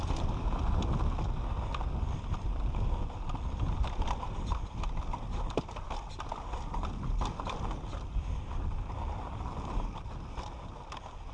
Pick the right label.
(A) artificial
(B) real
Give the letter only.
B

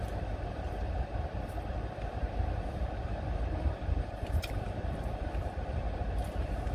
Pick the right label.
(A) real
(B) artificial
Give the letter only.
B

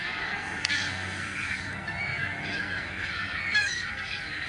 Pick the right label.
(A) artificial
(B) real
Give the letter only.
A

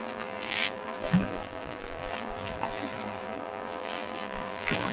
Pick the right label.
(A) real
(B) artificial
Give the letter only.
B